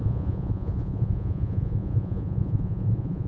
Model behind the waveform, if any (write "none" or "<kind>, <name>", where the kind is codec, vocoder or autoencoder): vocoder, Vocos